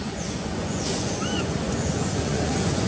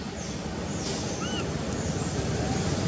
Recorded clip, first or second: second